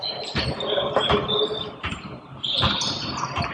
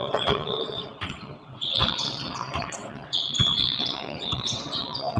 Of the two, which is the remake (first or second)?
second